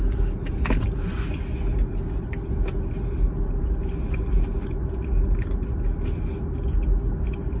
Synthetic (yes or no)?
no